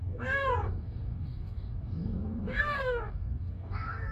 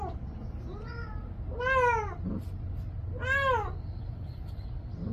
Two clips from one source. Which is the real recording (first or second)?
second